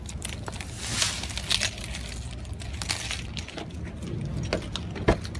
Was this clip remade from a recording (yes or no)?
no